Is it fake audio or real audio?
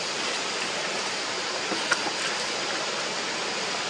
real